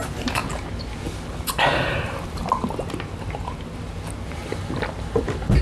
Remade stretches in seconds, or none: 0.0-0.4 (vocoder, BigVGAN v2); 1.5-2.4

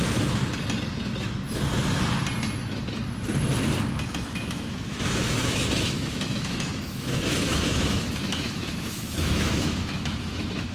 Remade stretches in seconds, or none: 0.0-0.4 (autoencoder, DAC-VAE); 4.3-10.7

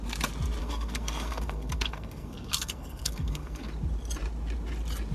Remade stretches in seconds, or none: 0.6-3.7 (codec, SNAC)